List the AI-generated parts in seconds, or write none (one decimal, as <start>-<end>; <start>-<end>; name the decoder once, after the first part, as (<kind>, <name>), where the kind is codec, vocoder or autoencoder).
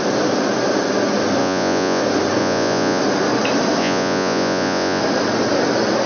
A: 1.4-2.0 (vocoder, Vocos); 2.4-3.0; 3.8-5.0